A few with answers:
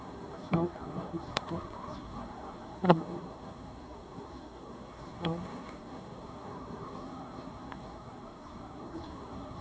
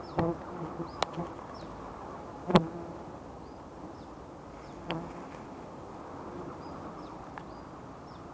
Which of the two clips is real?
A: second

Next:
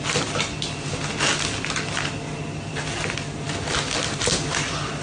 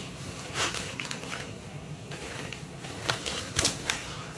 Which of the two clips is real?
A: first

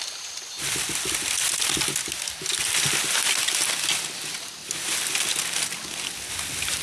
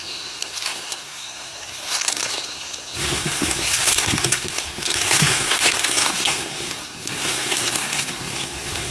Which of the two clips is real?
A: first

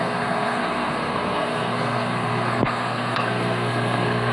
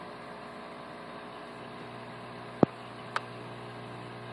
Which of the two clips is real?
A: second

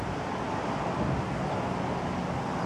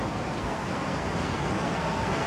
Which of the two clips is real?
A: first